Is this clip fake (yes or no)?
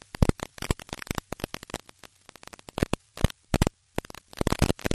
no